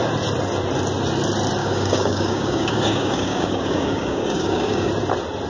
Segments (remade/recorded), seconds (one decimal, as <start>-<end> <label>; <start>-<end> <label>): 0.0-1.6 recorded; 1.6-4.9 remade; 4.9-5.5 recorded